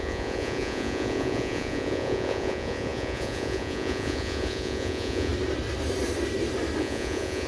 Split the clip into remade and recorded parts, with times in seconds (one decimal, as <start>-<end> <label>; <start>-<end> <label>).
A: 0.0-5.3 remade; 5.3-6.8 recorded; 6.8-7.5 remade